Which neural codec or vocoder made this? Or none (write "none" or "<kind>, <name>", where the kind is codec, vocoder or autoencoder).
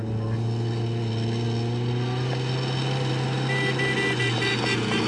none